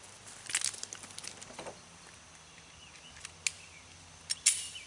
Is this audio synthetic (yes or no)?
no